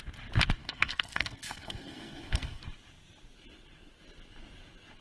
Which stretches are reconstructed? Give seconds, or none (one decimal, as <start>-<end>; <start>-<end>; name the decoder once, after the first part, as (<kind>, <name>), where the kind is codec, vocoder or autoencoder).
0.6-2.6 (codec, SNAC)